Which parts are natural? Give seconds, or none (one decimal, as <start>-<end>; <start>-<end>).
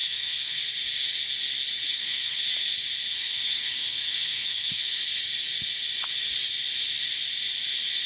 0.6-1.9; 2.4-3.1; 5.0-8.1